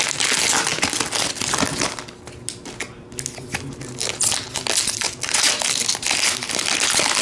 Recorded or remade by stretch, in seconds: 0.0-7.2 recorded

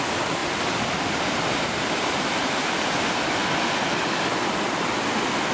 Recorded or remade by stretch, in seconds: 0.0-5.5 recorded

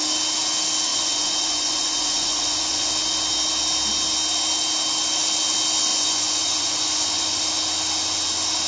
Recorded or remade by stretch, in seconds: 0.0-0.9 recorded; 0.9-2.9 remade; 2.9-5.9 recorded; 5.9-7.4 remade; 7.4-8.7 recorded

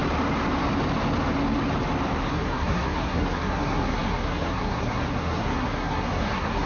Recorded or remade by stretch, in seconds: 0.0-2.3 recorded; 2.3-6.7 remade